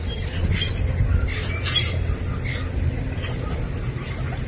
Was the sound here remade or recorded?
recorded